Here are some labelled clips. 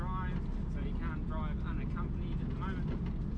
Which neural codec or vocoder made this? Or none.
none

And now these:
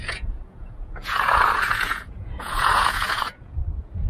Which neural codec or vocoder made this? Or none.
vocoder, Vocos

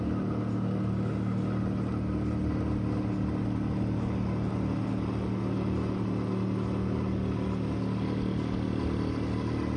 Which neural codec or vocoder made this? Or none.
none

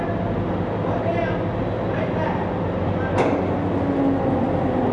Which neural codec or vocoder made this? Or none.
none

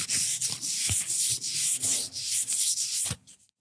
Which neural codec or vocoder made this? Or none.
none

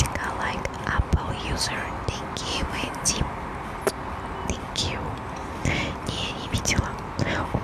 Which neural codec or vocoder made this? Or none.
none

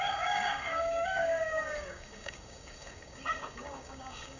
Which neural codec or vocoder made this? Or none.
codec, DAC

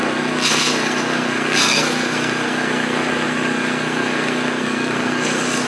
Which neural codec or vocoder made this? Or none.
codec, SNAC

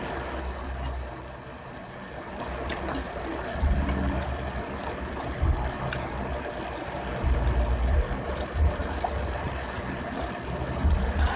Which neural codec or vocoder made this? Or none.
none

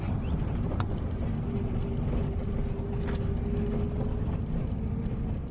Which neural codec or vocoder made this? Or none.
none